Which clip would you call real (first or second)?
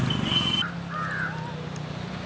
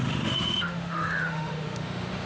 first